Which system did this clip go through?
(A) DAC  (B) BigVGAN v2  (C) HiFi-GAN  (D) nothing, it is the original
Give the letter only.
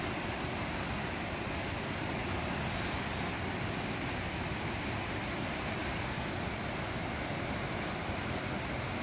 D